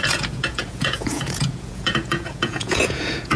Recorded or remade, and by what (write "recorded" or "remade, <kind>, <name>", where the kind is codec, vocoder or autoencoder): remade, vocoder, Vocos